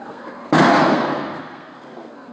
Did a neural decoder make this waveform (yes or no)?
yes